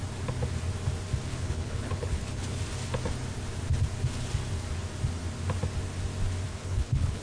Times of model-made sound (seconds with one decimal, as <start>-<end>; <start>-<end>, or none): 1.3-2.6; 6.5-7.2